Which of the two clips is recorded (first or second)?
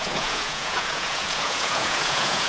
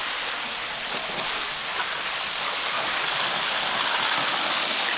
second